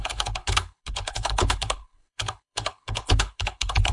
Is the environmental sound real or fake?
fake